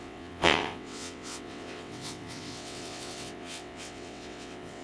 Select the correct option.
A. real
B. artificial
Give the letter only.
B